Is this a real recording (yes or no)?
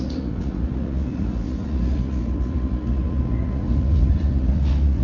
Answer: no